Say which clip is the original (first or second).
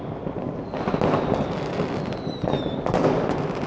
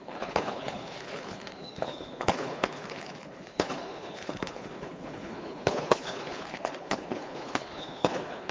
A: first